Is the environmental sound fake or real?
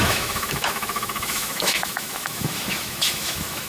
fake